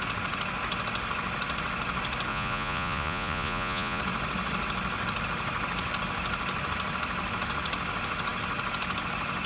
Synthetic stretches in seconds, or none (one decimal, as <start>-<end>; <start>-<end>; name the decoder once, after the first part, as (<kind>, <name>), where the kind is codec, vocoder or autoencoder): 2.3-4.0 (vocoder, Vocos)